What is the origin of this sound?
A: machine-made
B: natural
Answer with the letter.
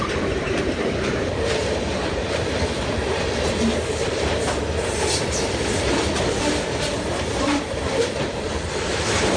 A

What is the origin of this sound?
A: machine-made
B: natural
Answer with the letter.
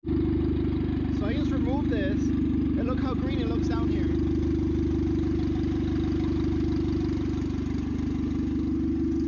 B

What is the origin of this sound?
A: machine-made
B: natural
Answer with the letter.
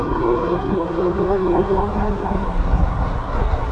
A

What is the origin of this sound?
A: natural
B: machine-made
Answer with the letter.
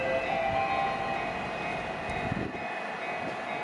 A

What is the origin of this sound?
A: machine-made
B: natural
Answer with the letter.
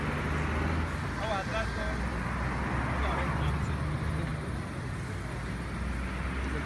B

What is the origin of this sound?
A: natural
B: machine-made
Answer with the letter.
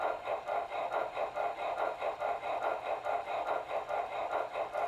A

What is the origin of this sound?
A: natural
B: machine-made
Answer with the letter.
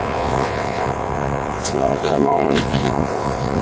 B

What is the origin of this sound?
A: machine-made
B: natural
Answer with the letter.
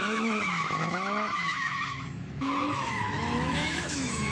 A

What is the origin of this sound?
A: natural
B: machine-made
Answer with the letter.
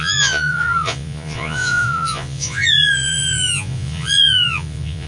B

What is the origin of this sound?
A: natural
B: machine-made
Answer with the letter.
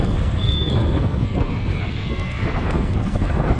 B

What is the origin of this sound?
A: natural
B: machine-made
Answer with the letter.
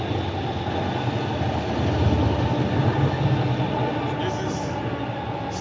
A